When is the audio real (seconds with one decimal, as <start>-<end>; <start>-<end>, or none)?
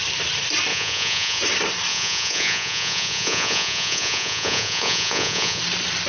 0.0-0.7; 1.4-1.9; 5.6-6.1